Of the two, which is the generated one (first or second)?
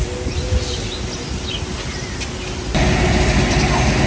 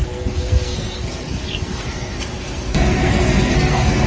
second